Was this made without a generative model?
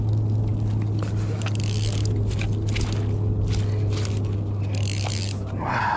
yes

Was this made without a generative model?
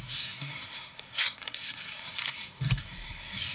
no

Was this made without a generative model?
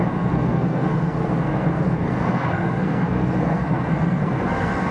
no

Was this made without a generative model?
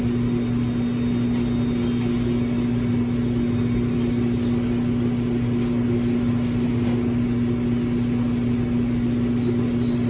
yes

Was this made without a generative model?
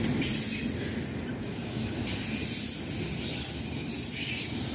yes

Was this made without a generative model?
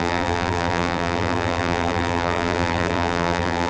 no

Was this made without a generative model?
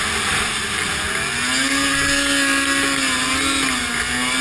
yes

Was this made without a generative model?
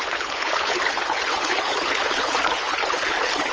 no